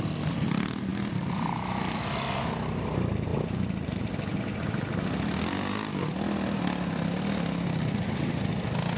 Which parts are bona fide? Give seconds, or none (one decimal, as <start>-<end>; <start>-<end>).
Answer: 0.0-9.0